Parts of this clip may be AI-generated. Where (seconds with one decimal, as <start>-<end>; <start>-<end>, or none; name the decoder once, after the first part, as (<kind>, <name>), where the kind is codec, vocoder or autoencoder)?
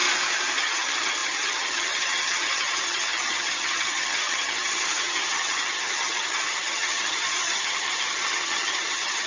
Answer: 0.6-9.3 (vocoder, HiFi-GAN)